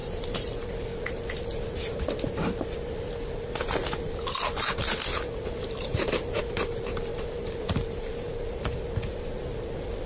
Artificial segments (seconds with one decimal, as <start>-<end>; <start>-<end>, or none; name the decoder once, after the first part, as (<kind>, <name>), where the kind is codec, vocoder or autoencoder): 0.0-0.7 (vocoder, BigVGAN v2); 5.1-6.4; 7.1-8.6